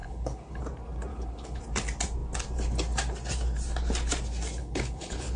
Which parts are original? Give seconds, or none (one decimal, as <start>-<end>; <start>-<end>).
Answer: 0.6-1.1; 1.6-4.6